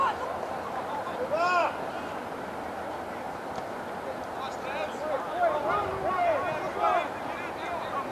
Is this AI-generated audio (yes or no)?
no